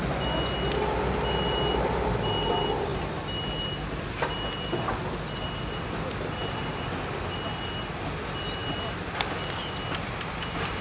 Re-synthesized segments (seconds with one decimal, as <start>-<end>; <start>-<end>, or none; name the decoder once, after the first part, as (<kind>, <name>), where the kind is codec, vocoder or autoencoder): none